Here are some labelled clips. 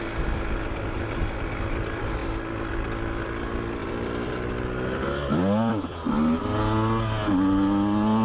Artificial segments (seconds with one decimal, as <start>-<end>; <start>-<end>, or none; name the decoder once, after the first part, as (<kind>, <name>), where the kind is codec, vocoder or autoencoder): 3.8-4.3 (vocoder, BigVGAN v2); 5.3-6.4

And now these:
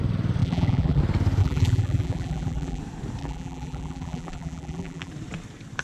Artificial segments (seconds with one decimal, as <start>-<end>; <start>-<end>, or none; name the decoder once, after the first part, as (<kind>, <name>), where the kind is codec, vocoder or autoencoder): 0.4-1.0 (vocoder, BigVGAN v2); 1.4-2.8; 3.2-5.1

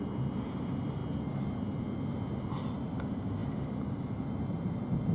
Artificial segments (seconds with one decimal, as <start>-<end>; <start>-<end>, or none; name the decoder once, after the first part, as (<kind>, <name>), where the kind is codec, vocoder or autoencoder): 0.0-1.0 (vocoder, BigVGAN v2); 2.9-5.1